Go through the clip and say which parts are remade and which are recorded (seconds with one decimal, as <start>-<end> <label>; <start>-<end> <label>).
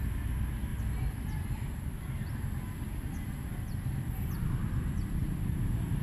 0.0-6.0 recorded